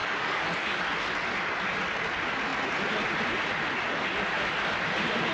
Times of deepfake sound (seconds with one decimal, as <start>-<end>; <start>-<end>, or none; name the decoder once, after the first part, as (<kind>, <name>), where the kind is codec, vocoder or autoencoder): 0.0-0.8 (codec, DAC)